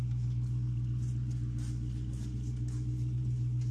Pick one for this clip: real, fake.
real